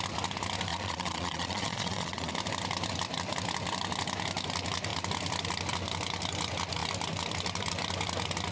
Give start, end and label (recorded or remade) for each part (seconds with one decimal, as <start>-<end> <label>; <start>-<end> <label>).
0.0-0.7 recorded; 0.7-2.3 remade; 2.3-8.5 recorded

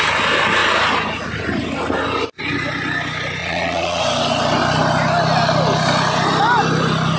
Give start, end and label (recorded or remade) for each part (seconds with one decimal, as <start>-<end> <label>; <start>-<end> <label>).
0.0-3.4 recorded; 3.4-4.0 remade; 4.0-7.2 recorded

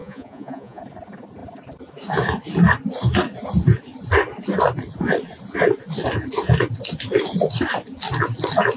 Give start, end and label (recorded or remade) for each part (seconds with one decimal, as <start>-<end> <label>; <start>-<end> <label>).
0.0-0.8 remade; 0.8-8.8 recorded

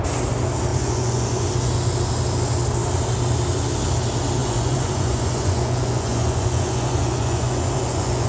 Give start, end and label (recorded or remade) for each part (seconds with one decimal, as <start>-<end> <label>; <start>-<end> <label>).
0.0-0.7 recorded; 0.7-1.7 remade; 1.7-4.4 recorded; 4.4-8.3 remade

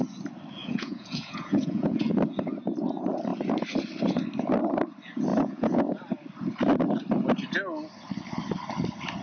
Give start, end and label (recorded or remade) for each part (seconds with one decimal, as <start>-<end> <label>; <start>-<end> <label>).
0.0-0.6 recorded; 0.6-2.1 remade; 2.1-5.3 recorded; 5.3-6.0 remade; 6.0-9.2 recorded

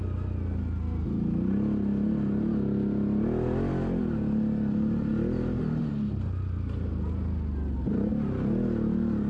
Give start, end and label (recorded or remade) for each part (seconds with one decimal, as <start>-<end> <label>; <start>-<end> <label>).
0.0-9.3 recorded

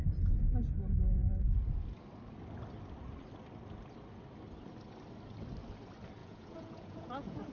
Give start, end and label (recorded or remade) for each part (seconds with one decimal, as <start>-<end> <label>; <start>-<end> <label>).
0.0-6.2 recorded; 6.2-7.5 remade

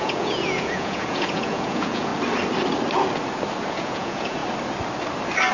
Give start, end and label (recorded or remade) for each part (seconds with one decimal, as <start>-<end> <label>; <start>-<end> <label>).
0.0-2.1 remade; 2.1-3.7 recorded; 3.7-4.4 remade; 4.4-5.5 recorded